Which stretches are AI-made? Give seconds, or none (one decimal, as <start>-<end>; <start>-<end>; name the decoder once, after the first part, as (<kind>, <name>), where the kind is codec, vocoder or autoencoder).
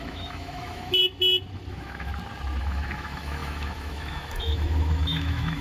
0.0-1.0 (autoencoder, DAC-VAE); 1.7-2.1; 2.6-5.6